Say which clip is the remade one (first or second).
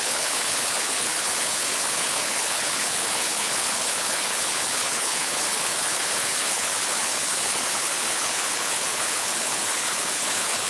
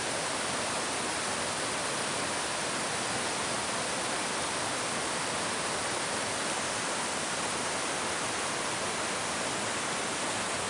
first